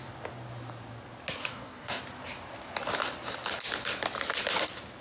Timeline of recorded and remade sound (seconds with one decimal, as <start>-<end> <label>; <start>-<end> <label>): 0.0-1.4 recorded; 1.4-2.0 remade; 2.0-5.0 recorded